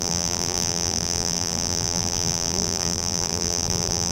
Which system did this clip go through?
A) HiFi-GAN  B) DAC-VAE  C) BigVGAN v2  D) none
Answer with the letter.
C